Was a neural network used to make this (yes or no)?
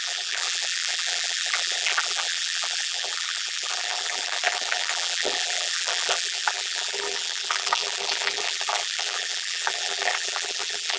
yes